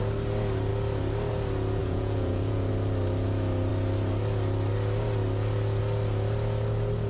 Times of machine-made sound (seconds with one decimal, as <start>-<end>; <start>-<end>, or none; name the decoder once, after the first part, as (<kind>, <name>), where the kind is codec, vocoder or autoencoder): 1.8-2.7 (vocoder, Vocos)